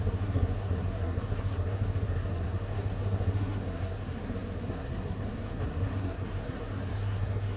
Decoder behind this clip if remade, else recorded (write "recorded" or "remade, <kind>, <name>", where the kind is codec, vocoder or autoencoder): remade, codec, SNAC